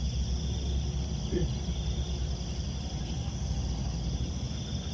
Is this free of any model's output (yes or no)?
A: yes